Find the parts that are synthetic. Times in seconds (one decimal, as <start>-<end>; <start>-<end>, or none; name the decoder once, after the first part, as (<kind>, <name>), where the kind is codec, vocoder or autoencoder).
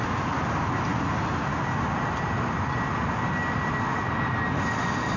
none